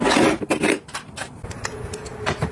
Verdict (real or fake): fake